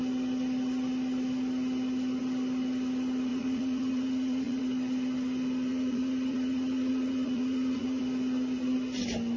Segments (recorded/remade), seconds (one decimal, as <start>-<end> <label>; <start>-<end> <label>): 0.0-3.3 recorded; 3.3-4.6 remade; 4.6-5.7 recorded; 5.7-8.0 remade; 8.0-9.4 recorded